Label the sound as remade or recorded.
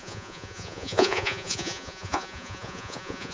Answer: remade